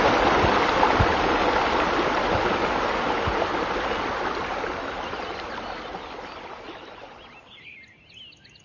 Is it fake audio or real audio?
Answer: real